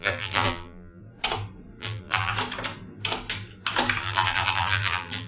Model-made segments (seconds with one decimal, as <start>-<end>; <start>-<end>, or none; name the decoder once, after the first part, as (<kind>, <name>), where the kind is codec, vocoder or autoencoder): 0.0-1.0 (vocoder, BigVGAN v2); 1.8-2.3; 4.0-5.3